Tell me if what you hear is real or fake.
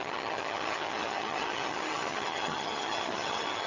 fake